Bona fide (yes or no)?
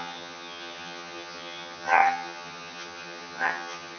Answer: no